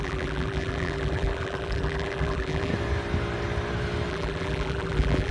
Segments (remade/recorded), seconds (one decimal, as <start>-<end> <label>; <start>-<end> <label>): 0.0-2.7 remade; 2.7-4.1 recorded; 4.1-5.3 remade